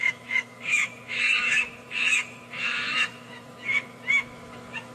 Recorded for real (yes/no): no